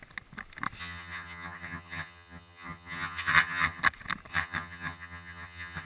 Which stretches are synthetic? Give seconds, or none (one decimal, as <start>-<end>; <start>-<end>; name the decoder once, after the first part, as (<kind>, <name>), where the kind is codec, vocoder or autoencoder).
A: 0.8-3.8 (vocoder, HiFi-GAN); 4.3-5.9